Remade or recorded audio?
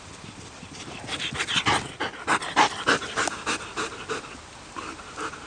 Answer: recorded